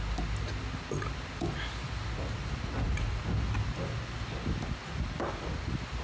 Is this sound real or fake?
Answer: real